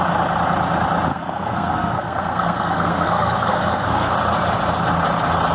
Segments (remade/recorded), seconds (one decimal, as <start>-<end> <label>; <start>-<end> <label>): 0.0-1.1 recorded; 1.1-4.1 remade; 4.1-5.5 recorded